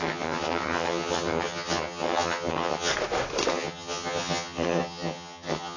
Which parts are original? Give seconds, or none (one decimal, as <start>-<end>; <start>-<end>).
2.9-3.5